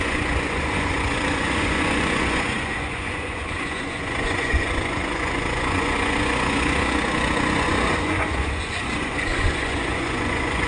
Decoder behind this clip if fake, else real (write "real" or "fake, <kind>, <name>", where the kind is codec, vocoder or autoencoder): fake, vocoder, Vocos